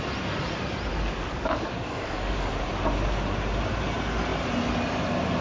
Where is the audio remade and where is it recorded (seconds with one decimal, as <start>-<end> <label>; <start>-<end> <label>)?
0.0-0.9 recorded; 0.9-2.5 remade; 2.5-5.4 recorded